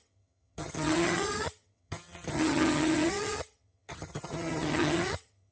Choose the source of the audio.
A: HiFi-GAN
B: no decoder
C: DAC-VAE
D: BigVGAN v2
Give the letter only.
A